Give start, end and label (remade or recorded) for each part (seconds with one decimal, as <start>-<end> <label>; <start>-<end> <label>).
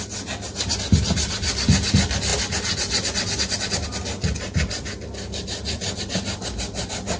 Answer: 0.0-7.2 recorded